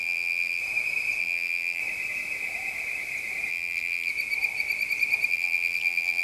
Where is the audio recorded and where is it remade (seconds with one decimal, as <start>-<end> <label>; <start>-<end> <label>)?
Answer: 0.0-0.6 remade; 0.6-1.2 recorded; 1.2-1.8 remade; 1.8-3.5 recorded; 3.5-4.1 remade; 4.1-5.3 recorded; 5.3-6.2 remade

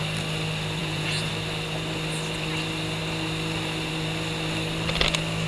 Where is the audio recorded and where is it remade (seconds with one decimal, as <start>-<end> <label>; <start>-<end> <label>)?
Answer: 0.0-0.8 recorded; 0.8-1.3 remade; 1.3-5.5 recorded

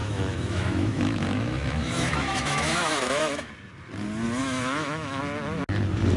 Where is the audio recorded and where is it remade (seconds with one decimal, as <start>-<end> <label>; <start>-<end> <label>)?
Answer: 0.0-3.5 remade; 3.5-4.4 recorded; 4.4-5.2 remade; 5.2-6.2 recorded

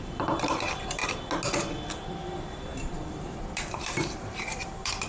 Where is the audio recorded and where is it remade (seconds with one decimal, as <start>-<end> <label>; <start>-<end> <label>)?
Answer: 0.0-1.0 remade; 1.0-2.1 recorded; 2.1-5.1 remade

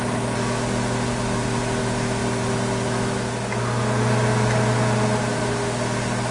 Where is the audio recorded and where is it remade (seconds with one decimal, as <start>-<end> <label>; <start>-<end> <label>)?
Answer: 0.0-6.3 recorded

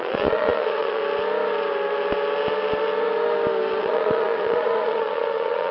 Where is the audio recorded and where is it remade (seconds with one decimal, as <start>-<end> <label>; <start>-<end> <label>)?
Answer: 0.0-1.0 remade; 1.0-3.8 recorded; 3.8-5.7 remade